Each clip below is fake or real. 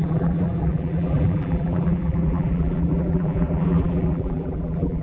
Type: fake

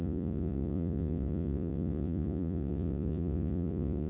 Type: fake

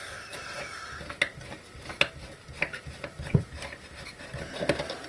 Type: real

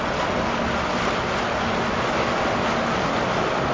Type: real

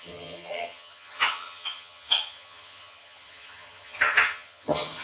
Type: fake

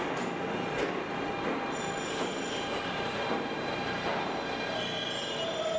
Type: real